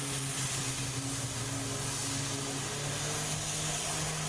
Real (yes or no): yes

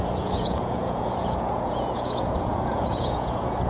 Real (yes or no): no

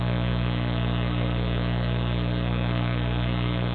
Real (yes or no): no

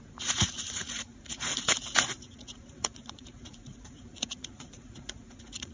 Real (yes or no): no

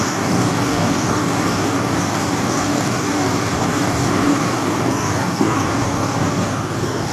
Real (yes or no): no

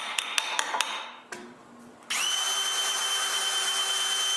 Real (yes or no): yes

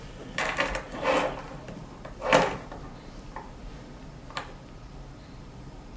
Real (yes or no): yes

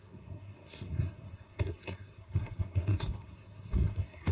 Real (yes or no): no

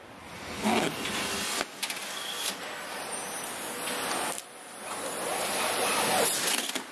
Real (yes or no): yes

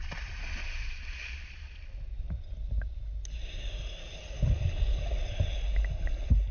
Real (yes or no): yes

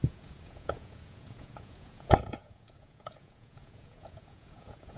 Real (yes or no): no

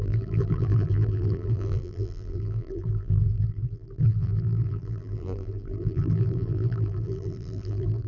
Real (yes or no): no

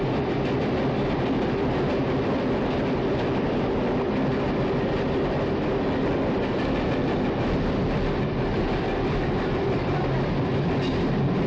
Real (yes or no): yes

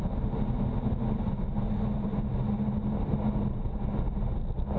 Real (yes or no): yes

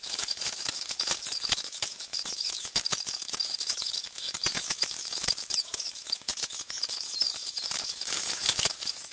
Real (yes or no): no